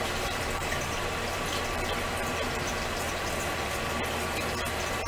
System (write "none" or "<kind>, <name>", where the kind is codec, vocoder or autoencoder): vocoder, BigVGAN v2